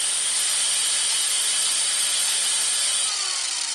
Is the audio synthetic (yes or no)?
no